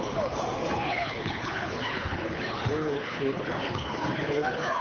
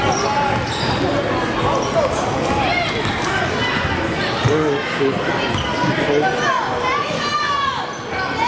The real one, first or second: second